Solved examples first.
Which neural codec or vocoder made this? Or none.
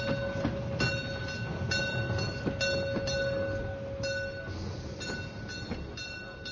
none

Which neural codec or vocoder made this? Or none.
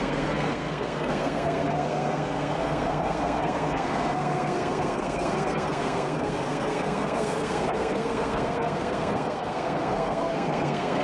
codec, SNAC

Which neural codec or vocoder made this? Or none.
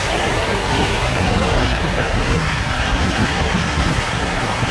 codec, SNAC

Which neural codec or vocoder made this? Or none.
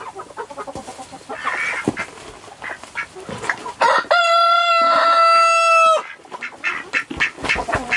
none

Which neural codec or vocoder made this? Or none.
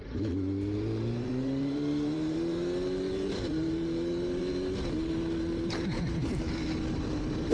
vocoder, BigVGAN v2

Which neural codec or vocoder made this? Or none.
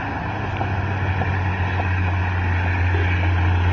none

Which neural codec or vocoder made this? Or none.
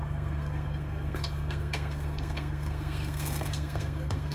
codec, SNAC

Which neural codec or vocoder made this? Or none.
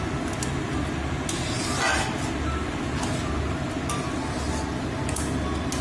none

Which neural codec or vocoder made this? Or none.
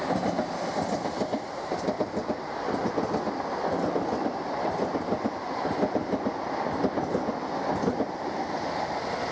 none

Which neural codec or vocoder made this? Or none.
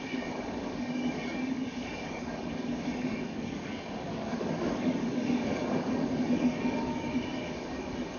codec, DAC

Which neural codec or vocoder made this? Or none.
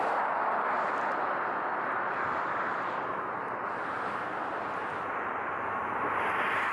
none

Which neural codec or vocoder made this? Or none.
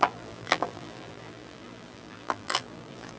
vocoder, BigVGAN v2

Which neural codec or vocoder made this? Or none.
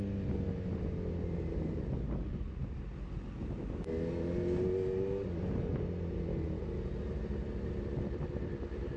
none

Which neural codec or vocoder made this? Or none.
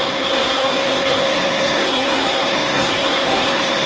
codec, SNAC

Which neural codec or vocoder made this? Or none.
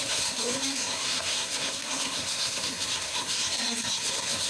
codec, SNAC